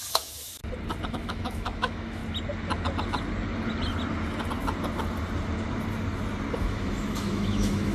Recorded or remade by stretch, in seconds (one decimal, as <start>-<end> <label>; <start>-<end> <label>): 0.0-0.6 remade; 0.6-1.1 recorded; 1.1-2.2 remade; 2.2-6.6 recorded; 6.6-7.9 remade